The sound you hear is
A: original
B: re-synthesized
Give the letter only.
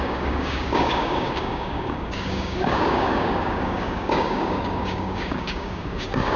B